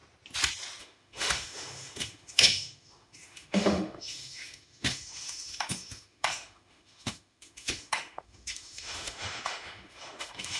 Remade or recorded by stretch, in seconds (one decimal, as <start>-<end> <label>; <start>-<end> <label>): 0.0-0.8 recorded; 0.8-10.6 remade